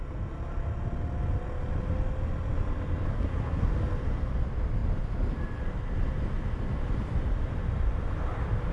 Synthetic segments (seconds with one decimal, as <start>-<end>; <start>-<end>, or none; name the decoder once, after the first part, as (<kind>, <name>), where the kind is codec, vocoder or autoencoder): 3.1-3.7 (codec, SNAC)